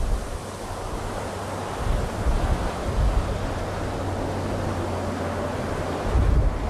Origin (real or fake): real